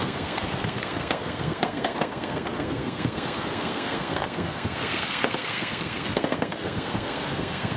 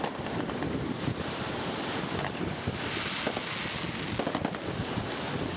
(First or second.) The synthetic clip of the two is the first